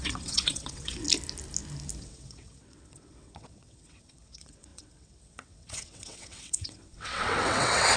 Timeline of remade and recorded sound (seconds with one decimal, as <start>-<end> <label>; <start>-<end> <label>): 0.0-1.0 remade; 1.0-2.0 recorded; 2.0-8.0 remade